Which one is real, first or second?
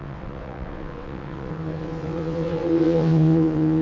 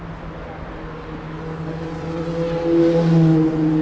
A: second